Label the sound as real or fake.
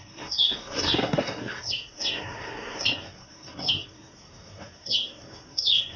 fake